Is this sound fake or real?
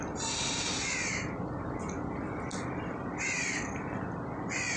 real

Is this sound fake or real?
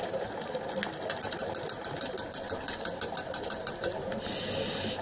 real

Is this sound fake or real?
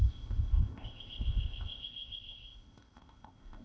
fake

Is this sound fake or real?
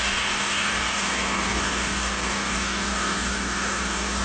fake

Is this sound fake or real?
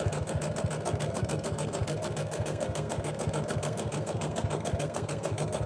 fake